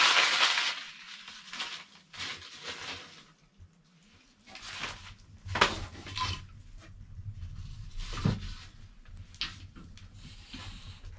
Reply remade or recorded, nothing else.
recorded